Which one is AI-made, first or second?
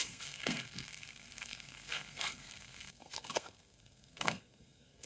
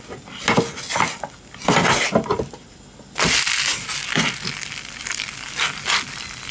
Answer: first